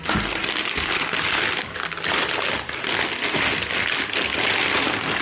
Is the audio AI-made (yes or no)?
no